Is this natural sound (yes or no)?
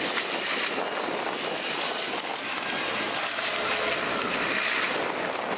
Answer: yes